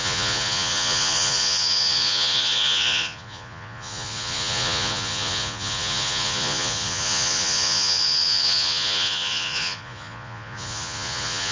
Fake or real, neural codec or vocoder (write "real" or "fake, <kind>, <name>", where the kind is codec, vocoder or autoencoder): fake, vocoder, Vocos